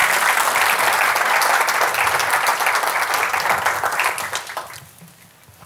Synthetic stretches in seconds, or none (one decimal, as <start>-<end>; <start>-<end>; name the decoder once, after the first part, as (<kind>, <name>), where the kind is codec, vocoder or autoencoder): none